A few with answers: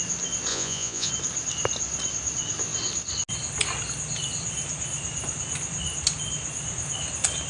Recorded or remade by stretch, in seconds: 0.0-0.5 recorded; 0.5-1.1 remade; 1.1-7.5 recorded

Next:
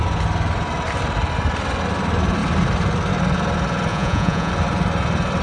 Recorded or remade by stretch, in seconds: 0.0-3.9 recorded; 3.9-4.5 remade; 4.5-5.4 recorded

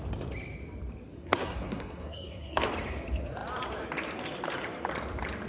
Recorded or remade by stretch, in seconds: 0.0-1.1 recorded; 1.1-2.6 remade; 2.6-5.5 recorded

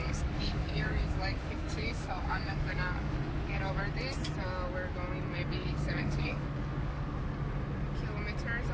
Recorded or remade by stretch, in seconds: 0.0-3.8 remade; 3.8-5.6 recorded; 5.6-7.1 remade; 7.1-8.7 recorded

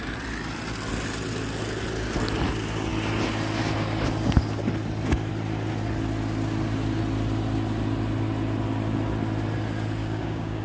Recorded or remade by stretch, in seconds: 0.0-10.0 recorded; 10.0-10.6 remade

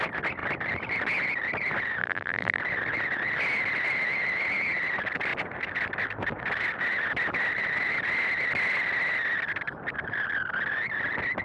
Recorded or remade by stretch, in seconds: 0.0-2.0 recorded; 2.0-2.6 remade; 2.6-11.4 recorded